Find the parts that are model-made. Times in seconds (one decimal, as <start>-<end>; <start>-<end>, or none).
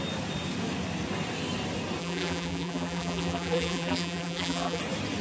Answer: 2.0-4.8